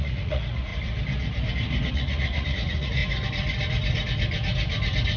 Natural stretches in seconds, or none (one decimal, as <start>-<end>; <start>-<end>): 0.7-1.9; 3.0-5.2